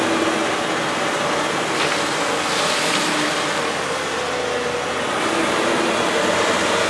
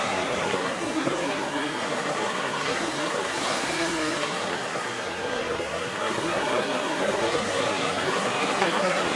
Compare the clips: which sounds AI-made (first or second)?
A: second